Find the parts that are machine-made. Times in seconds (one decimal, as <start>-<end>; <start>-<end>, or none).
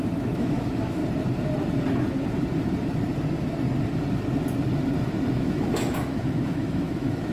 0.0-1.0; 5.4-7.3